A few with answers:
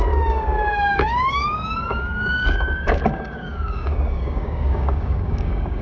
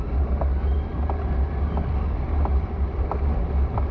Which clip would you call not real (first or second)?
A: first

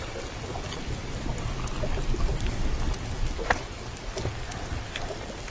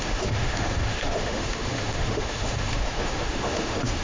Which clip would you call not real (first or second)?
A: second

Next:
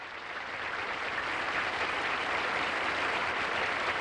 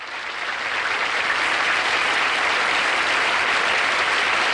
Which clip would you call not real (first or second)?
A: first